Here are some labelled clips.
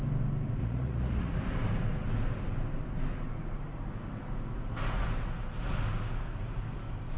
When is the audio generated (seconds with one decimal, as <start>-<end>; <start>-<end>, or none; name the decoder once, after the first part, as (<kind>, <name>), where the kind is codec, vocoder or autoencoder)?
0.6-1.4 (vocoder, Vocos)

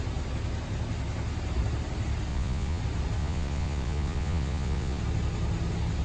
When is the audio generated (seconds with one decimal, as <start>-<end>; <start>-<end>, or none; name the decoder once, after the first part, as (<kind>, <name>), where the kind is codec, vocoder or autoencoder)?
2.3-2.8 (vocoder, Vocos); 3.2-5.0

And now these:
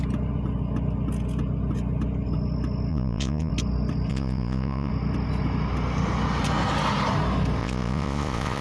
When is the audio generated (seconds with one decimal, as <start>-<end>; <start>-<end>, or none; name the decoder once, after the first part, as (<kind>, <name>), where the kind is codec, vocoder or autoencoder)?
2.9-3.5 (vocoder, Vocos); 4.1-4.9; 7.6-8.6

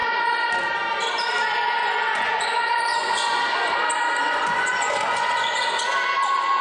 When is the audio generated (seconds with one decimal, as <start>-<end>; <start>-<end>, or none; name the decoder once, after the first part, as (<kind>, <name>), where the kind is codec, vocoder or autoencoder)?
0.0-0.5 (vocoder, Vocos); 1.8-3.7; 4.2-5.6

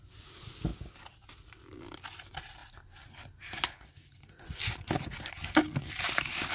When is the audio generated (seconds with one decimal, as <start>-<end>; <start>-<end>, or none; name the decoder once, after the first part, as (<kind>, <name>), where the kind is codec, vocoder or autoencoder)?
none

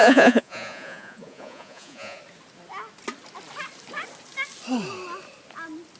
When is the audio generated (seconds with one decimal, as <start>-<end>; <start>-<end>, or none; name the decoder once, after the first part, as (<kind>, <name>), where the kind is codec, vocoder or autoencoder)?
0.0-2.2 (vocoder, Vocos)

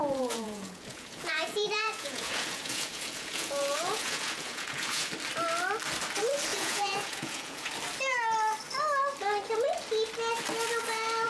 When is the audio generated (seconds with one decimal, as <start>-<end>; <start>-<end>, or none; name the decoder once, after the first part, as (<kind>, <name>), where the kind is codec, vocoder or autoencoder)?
0.0-5.1 (vocoder, Vocos); 6.5-7.7

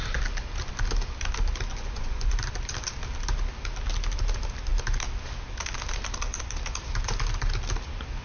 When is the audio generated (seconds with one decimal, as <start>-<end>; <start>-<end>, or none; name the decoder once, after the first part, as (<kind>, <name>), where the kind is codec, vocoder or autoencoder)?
1.7-2.3 (vocoder, Vocos)